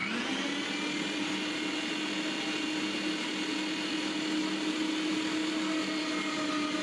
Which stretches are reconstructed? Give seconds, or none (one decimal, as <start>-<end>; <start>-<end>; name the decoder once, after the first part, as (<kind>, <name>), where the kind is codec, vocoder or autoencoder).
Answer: none